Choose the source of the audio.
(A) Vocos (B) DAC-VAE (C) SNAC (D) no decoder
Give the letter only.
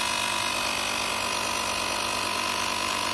D